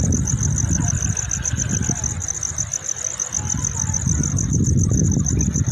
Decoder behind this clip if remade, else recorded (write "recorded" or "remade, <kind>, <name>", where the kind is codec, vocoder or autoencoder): recorded